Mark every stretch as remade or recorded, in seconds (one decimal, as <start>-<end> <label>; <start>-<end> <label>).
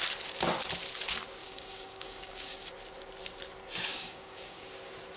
0.0-1.4 recorded; 1.4-2.7 remade; 2.7-3.9 recorded; 3.9-4.7 remade; 4.7-5.2 recorded